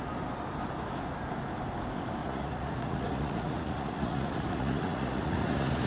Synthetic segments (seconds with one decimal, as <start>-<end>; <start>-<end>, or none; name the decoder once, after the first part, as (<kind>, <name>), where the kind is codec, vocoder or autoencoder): 2.2-5.9 (vocoder, Vocos)